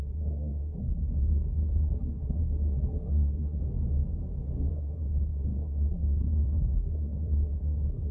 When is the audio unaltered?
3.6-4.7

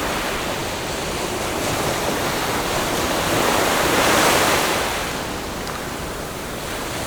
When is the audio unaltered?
0.0-7.1

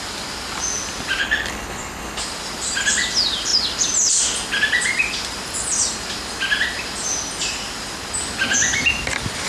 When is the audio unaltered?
0.0-1.2; 2.2-9.5

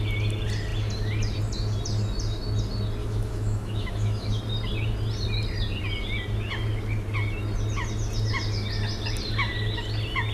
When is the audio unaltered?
0.0-3.0; 4.4-10.3

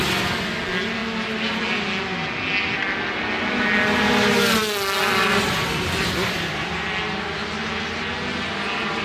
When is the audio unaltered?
0.0-9.0